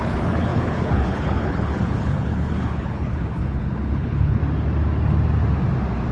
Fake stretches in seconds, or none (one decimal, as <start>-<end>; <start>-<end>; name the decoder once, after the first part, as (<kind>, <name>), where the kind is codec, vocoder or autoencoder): 0.0-4.4 (codec, HILCodec)